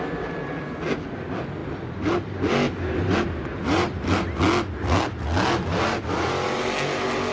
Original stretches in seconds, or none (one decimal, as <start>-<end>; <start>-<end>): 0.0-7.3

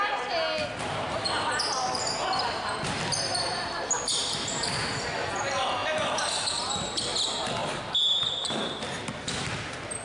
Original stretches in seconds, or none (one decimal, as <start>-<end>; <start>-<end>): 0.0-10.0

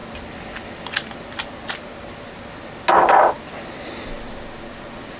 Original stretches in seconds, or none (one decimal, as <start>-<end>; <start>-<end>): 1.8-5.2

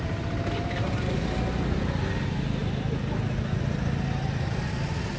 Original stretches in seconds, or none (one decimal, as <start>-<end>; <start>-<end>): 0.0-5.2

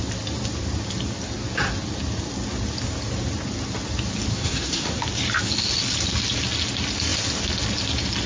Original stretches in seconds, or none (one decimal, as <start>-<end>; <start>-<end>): 0.0-4.3; 5.0-8.3

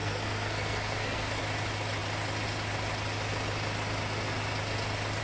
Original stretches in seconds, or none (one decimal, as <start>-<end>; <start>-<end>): 1.4-5.2

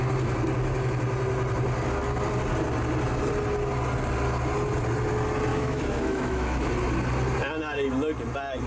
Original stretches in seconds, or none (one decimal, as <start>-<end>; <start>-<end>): 0.0-5.5; 6.7-8.7

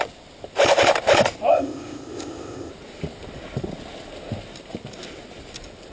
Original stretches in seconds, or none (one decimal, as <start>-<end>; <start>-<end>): 0.0-1.5; 2.7-5.9